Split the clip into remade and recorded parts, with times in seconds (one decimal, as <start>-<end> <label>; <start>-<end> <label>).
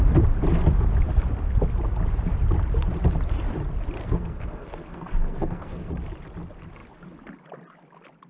0.0-4.0 recorded; 4.0-5.9 remade; 5.9-8.3 recorded